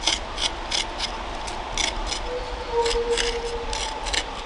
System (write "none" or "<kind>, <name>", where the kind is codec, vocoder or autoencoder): none